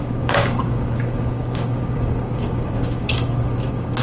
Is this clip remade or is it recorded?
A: remade